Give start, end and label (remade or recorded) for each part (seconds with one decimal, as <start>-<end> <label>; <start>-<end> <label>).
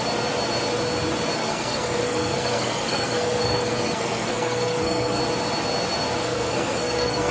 0.0-1.4 recorded; 1.4-5.2 remade; 5.2-6.2 recorded; 6.2-7.3 remade